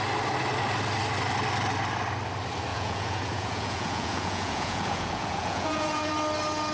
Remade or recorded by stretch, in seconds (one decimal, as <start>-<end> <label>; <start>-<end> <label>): 0.0-2.7 recorded; 2.7-6.1 remade; 6.1-6.7 recorded